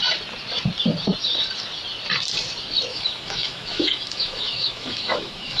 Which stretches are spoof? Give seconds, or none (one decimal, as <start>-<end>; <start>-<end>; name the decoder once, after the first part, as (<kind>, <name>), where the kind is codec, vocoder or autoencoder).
2.9-5.6 (autoencoder, DAC-VAE)